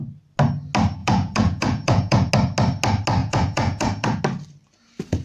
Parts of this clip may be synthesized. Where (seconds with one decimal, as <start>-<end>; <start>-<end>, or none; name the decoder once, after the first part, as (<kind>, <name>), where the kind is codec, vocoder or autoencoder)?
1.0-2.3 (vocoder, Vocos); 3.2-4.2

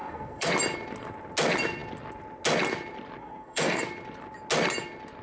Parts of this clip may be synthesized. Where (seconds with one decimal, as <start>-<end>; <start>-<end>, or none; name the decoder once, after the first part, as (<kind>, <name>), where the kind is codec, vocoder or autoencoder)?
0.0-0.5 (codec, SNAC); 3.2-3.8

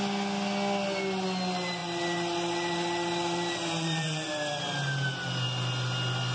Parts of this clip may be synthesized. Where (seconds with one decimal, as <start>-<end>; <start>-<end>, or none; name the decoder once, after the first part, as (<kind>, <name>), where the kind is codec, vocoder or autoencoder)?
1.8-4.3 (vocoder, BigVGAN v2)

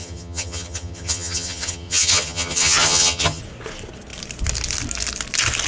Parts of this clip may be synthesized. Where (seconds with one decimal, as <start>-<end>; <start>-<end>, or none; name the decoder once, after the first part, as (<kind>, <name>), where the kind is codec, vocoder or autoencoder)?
0.0-3.4 (vocoder, HiFi-GAN)

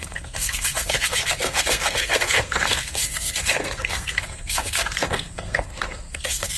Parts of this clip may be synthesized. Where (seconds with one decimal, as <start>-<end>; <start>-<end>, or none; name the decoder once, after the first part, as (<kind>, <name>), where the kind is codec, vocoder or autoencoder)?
0.0-6.6 (codec, SNAC)

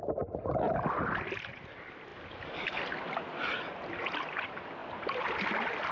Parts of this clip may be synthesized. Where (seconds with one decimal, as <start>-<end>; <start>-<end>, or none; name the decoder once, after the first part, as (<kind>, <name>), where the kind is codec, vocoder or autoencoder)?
none

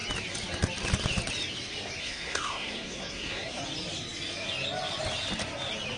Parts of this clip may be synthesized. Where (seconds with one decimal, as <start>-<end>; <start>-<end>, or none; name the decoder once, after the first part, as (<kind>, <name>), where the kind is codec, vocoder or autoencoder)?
2.0-3.6 (codec, SNAC)